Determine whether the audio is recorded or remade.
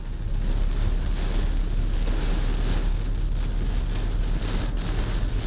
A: recorded